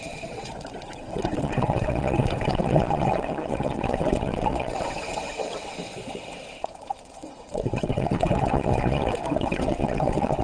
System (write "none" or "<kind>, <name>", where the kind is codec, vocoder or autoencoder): vocoder, WaveNeXt